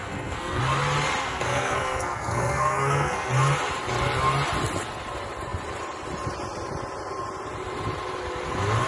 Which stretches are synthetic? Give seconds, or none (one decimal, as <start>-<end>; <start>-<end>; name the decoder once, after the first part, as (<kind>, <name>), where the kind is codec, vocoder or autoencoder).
0.0-0.6 (codec, SNAC); 1.2-3.3